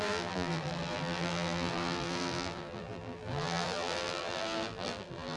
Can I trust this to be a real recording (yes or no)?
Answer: no